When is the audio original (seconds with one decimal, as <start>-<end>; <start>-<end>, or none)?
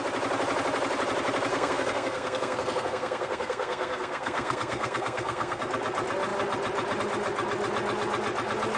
0.0-1.5; 5.6-8.8